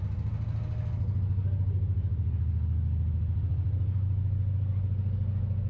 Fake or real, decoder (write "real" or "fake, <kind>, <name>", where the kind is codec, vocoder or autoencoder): real